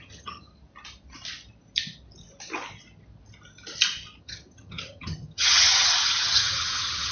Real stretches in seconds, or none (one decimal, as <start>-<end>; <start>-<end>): 0.5-4.2